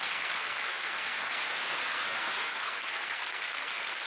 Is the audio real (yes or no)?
no